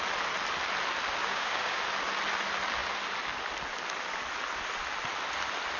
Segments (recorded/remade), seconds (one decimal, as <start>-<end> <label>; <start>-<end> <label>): 0.0-1.2 recorded; 1.2-1.8 remade; 1.8-5.8 recorded